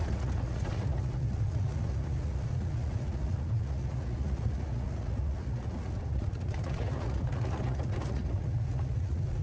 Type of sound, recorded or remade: remade